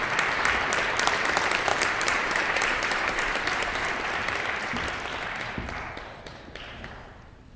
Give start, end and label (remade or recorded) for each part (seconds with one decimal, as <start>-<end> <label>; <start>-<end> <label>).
0.0-1.7 recorded; 1.7-3.9 remade; 3.9-6.3 recorded; 6.3-6.9 remade; 6.9-7.6 recorded